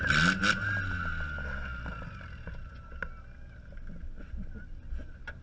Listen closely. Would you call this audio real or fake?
real